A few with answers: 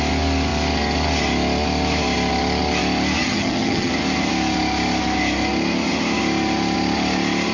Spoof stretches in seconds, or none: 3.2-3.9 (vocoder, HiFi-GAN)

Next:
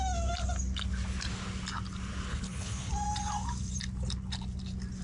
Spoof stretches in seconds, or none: 2.3-2.9 (codec, HILCodec)

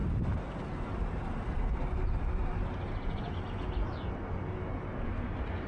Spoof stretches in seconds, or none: none

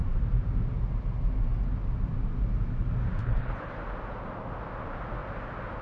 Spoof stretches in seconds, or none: 3.2-3.7 (codec, HILCodec)

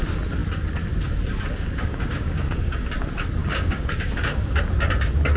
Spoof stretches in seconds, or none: 1.5-2.9 (codec, DAC); 3.4-4.6

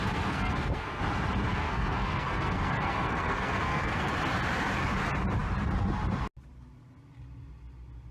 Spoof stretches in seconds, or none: 0.0-1.0 (codec, SNAC); 1.5-4.1

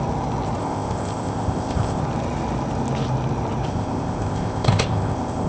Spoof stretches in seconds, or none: 0.6-2.0 (codec, ZipCodec); 3.7-5.5